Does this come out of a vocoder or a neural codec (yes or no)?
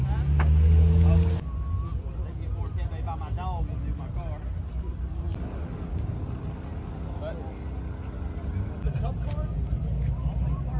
no